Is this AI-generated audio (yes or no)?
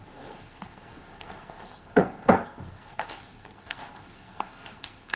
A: yes